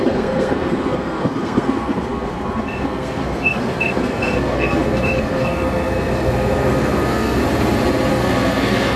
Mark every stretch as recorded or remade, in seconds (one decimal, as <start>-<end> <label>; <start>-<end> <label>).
0.0-7.4 remade; 7.4-8.1 recorded; 8.1-9.0 remade